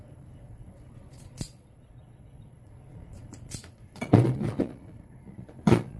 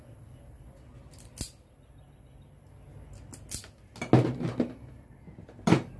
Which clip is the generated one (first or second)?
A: first